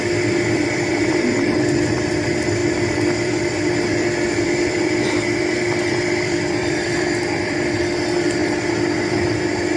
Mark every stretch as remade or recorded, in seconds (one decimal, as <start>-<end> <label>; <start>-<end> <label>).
0.0-9.8 remade